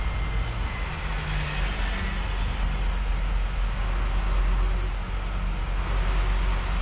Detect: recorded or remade recorded